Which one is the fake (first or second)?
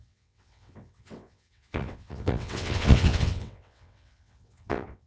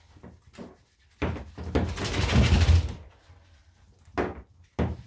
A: first